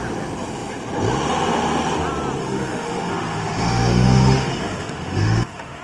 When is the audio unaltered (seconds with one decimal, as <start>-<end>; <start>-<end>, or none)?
0.0-2.4